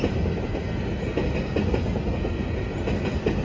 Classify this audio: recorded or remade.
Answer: recorded